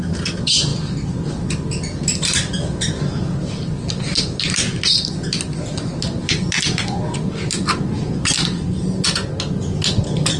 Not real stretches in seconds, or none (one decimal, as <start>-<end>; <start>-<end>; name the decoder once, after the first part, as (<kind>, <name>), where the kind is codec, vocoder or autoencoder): none